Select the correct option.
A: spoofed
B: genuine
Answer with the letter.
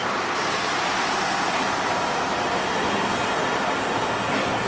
B